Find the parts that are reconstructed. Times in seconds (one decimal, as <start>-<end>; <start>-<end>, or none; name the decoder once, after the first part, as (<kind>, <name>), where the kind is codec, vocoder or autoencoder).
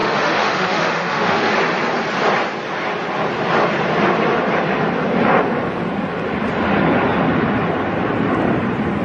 0.0-1.5 (autoencoder, DAC-VAE)